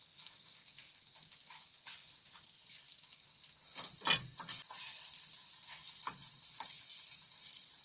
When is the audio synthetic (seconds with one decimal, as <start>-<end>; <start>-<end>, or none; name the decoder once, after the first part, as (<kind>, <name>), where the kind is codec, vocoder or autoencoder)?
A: 5.4-6.0 (vocoder, BigVGAN v2)